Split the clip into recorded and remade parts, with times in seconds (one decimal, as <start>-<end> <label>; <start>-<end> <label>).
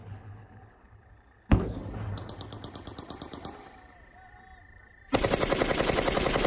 0.0-1.8 remade; 1.8-6.5 recorded